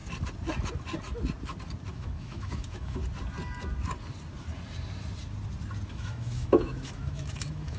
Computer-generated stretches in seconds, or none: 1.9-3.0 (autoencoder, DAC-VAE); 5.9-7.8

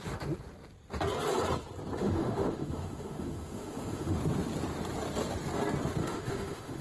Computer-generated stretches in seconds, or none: 2.0-4.2 (autoencoder, DAC-VAE); 6.0-6.8

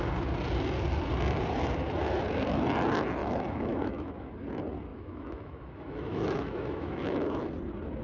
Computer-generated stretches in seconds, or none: 3.2-4.3 (autoencoder, DAC-VAE); 4.9-7.5